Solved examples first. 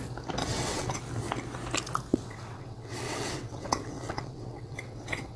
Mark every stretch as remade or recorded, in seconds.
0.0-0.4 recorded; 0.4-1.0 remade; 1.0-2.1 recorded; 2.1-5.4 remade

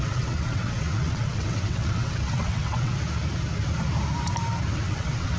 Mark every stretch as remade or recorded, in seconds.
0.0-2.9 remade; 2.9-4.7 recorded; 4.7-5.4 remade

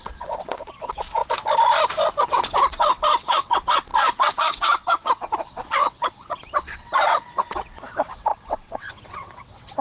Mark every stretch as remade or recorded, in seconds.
0.0-1.2 remade; 1.2-2.3 recorded; 2.3-9.8 remade